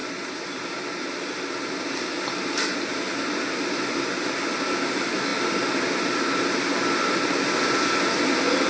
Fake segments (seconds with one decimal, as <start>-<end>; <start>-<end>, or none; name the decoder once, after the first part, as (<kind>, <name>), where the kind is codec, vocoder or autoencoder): none